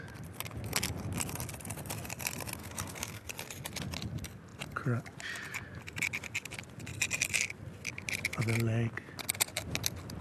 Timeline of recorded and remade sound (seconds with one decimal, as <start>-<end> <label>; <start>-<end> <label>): 0.0-2.6 recorded; 2.6-3.3 remade; 3.3-10.2 recorded